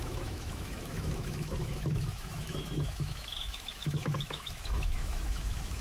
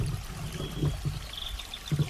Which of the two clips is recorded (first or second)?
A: second